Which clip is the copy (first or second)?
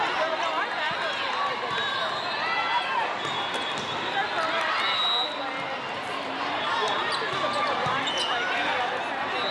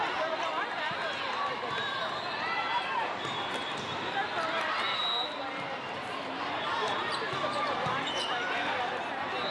second